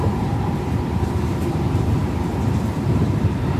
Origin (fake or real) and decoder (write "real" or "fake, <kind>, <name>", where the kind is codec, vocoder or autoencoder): fake, vocoder, BigVGAN v2